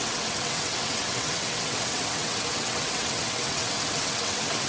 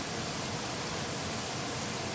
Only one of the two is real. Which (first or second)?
second